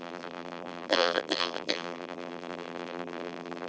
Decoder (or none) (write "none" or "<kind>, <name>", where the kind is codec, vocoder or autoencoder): vocoder, BigVGAN v2